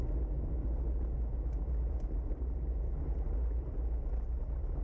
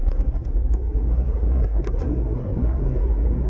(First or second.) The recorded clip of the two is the first